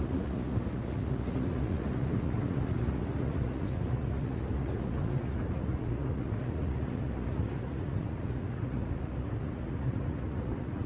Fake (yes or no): yes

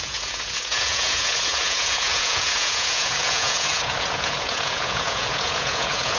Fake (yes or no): yes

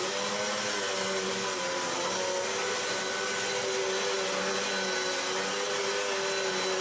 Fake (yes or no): no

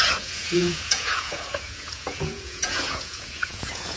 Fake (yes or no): yes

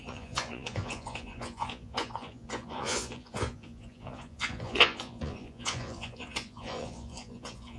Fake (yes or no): yes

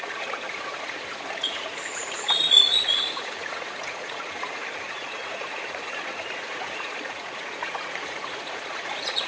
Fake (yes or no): yes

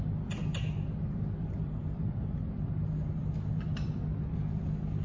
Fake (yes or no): no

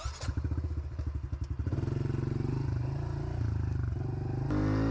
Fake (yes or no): no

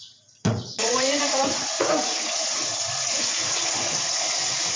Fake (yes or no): yes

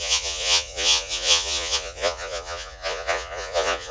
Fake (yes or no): yes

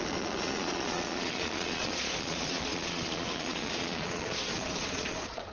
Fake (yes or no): yes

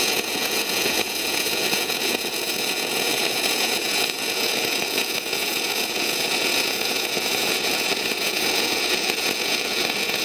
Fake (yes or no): yes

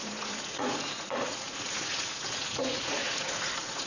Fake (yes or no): yes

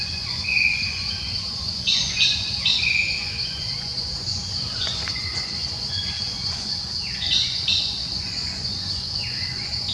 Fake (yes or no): yes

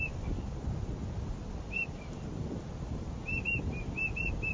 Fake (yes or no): no